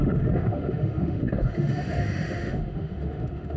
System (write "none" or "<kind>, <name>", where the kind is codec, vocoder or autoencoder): autoencoder, DAC-VAE